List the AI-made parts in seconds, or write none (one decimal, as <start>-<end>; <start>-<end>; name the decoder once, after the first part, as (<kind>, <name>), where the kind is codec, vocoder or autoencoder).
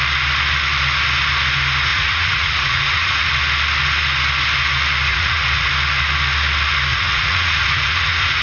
1.9-3.3 (vocoder, Vocos); 5.1-5.7; 6.9-8.4